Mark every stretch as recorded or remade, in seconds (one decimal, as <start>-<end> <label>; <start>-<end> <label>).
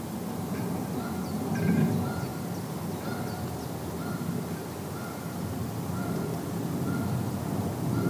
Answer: 0.0-8.1 recorded